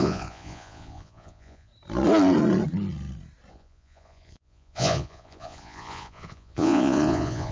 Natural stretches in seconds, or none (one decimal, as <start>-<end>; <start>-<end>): 1.7-3.5